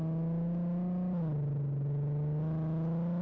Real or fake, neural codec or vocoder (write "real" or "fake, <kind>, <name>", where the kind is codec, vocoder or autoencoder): real